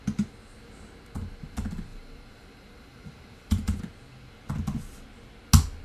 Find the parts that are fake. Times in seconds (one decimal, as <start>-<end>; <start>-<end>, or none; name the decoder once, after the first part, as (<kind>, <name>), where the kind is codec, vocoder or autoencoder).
1.9-3.8 (vocoder, BigVGAN v2)